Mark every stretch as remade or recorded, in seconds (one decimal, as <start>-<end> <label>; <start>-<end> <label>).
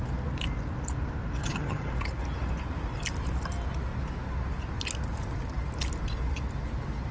0.0-1.4 recorded; 1.4-1.9 remade; 1.9-7.1 recorded